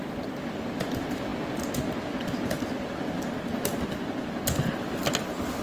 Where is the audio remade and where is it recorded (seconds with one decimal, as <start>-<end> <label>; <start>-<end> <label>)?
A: 0.0-5.6 recorded